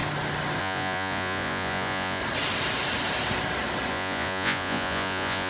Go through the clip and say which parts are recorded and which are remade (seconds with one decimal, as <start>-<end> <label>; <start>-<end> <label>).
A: 0.0-0.6 recorded; 0.6-2.2 remade; 2.2-3.9 recorded; 3.9-5.5 remade

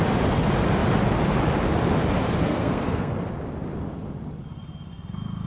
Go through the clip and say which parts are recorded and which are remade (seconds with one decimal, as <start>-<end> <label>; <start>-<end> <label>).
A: 0.0-2.4 recorded; 2.4-3.1 remade; 3.1-5.5 recorded

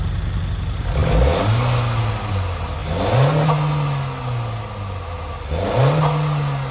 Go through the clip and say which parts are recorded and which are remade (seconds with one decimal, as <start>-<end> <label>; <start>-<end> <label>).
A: 0.0-6.7 recorded